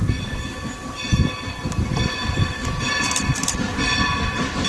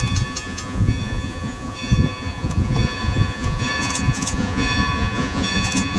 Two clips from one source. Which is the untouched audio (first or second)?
first